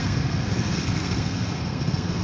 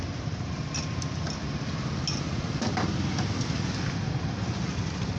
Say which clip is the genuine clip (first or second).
second